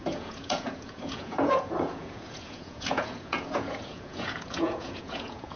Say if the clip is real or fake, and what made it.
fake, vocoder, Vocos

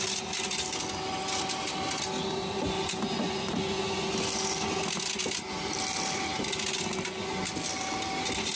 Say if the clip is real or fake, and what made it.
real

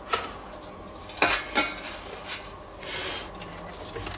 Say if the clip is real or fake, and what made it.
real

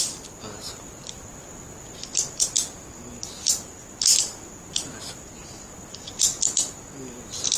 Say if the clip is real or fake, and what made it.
real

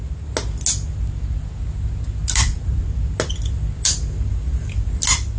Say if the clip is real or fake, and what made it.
real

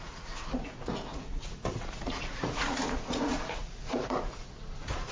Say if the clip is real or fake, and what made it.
fake, vocoder, Vocos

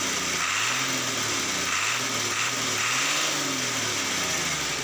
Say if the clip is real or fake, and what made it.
real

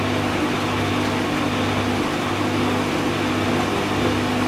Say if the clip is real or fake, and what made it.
real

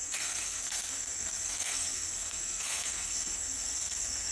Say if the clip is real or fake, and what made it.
fake, codec, SNAC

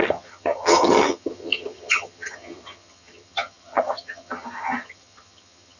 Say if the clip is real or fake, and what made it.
fake, vocoder, HiFi-GAN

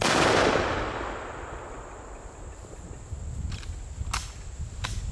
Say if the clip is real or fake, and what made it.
real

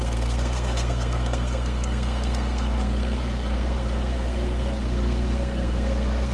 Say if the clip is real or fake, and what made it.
fake, codec, SNAC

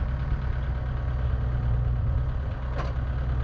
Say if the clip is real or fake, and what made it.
real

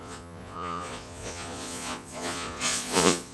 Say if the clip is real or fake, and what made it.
fake, vocoder, Vocos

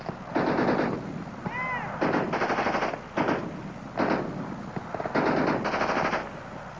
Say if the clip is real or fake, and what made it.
real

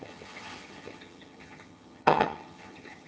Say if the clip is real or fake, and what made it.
fake, vocoder, HiFi-GAN